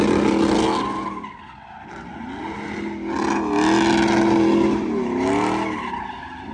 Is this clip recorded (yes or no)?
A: yes